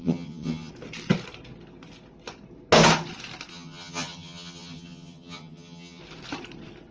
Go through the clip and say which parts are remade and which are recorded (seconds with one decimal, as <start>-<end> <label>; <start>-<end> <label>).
0.0-0.7 remade; 0.7-3.5 recorded; 3.5-6.0 remade; 6.0-6.9 recorded